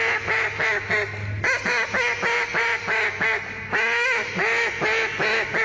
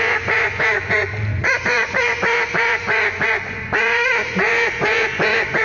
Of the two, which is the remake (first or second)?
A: second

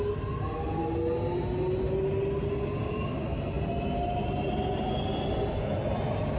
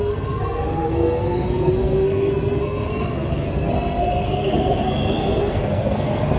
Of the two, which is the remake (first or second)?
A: second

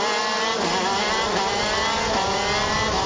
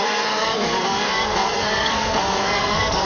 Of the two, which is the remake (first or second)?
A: second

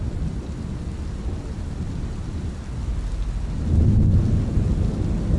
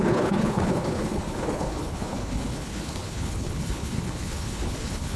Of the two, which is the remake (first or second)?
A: second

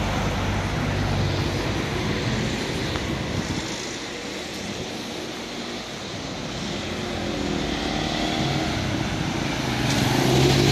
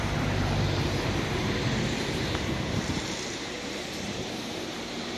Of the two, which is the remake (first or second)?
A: second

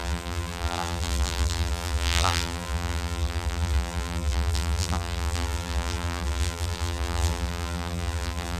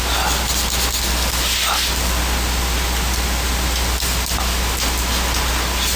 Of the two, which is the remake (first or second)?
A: first